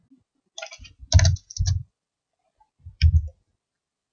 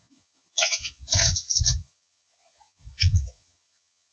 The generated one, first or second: second